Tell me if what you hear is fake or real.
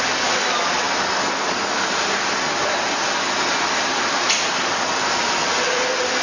real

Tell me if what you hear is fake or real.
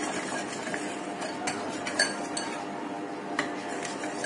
real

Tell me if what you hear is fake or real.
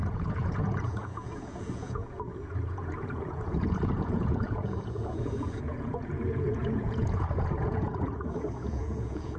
fake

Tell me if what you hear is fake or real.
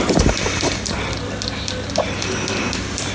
real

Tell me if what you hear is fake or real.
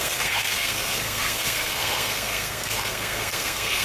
fake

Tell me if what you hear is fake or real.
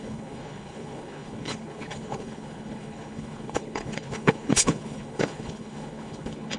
fake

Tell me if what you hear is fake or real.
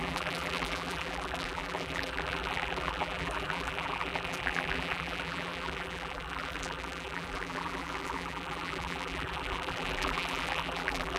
fake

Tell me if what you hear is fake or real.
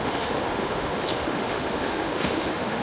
fake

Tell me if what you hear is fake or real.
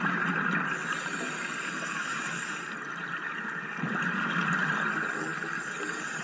real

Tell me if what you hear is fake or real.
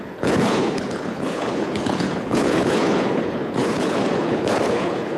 fake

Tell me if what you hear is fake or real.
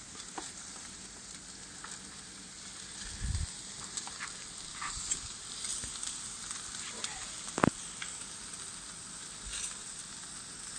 real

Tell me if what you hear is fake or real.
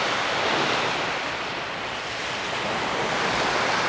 real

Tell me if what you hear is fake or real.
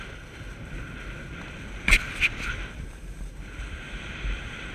fake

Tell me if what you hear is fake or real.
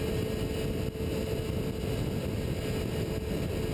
real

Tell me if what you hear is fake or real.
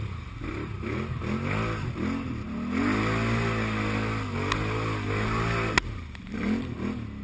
real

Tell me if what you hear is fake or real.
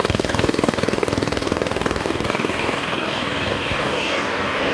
fake